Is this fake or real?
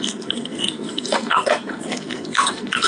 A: fake